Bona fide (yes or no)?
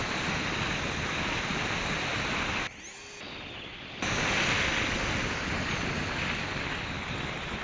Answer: yes